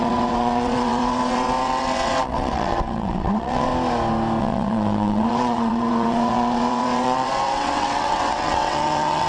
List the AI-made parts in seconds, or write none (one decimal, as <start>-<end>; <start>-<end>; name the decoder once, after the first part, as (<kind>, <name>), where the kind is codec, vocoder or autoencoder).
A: 0.0-3.7 (vocoder, WaveNeXt); 4.4-9.3